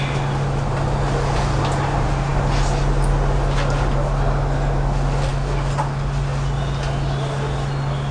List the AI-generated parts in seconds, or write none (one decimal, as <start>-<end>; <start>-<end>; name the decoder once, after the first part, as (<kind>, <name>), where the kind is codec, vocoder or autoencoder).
none